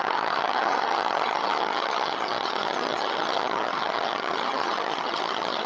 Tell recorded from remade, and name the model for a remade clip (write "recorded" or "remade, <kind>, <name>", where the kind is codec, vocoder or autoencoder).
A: remade, vocoder, HiFi-GAN